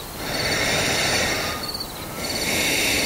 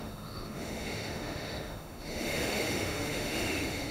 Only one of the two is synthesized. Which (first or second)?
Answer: second